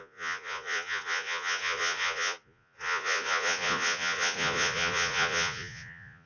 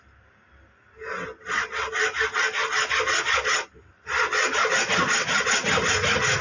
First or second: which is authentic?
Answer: second